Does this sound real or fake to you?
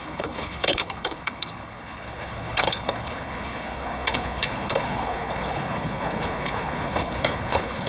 fake